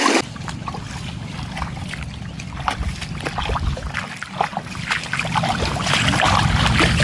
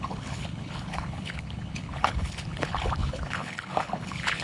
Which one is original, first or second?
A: first